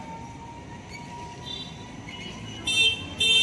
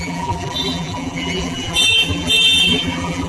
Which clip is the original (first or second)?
first